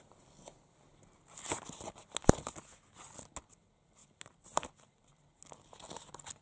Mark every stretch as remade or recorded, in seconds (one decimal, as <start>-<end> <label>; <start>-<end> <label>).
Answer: 0.0-6.4 recorded